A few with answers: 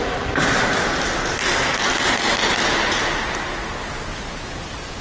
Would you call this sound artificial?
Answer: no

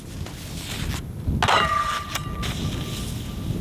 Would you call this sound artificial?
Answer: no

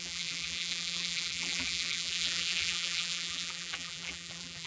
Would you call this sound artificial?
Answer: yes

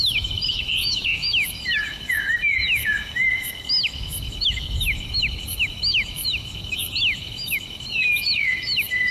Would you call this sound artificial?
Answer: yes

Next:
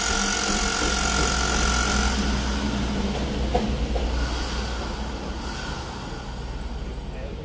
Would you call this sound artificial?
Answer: no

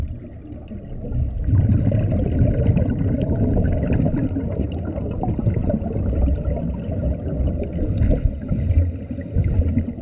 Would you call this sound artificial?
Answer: no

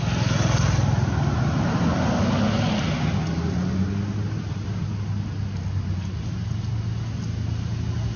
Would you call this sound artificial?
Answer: no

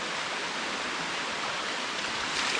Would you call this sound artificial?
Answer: no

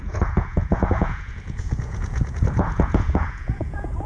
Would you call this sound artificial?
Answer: yes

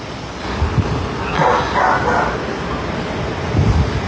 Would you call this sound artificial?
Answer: no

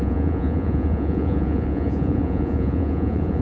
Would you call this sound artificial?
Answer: yes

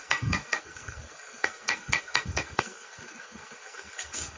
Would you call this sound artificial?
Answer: yes